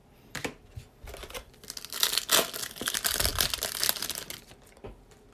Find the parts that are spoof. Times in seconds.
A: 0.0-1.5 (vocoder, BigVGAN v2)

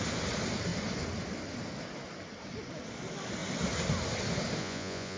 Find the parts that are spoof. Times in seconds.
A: 4.6-5.2 (vocoder, Vocos)

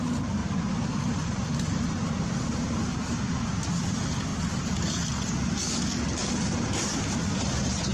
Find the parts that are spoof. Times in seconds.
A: 0.0-0.4 (vocoder, BigVGAN v2); 1.1-4.3; 6.2-7.9

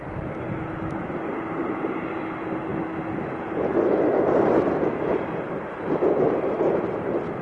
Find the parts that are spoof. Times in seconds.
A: none

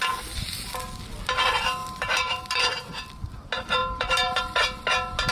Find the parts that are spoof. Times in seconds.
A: 1.8-2.6 (vocoder, BigVGAN v2); 3.8-4.4

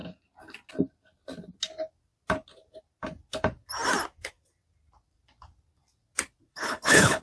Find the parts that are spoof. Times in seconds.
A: 6.5-7.2 (codec, HILCodec)

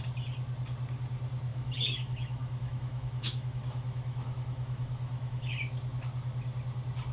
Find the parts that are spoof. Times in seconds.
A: 1.5-5.5 (autoencoder, DAC-VAE)

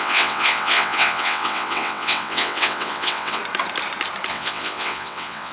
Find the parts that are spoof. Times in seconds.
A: 0.0-3.4 (vocoder, WaveNeXt); 4.3-5.5